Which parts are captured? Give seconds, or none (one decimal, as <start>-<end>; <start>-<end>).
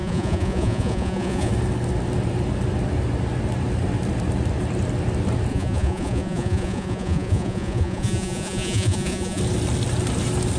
1.5-5.5; 9.4-10.6